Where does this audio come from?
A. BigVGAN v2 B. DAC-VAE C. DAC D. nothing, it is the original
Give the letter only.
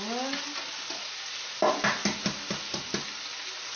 D